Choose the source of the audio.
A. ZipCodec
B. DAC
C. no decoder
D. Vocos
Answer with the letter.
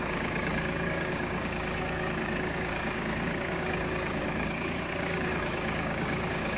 B